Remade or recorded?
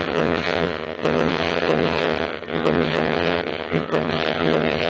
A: remade